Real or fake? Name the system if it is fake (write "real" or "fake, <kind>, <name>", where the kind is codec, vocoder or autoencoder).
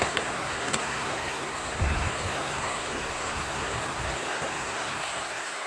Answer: fake, codec, SNAC